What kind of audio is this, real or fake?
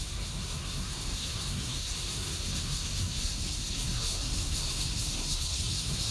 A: fake